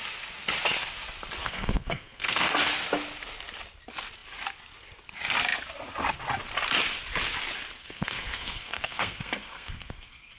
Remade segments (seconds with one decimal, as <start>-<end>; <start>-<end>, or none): 1.4-2.5; 7.8-10.4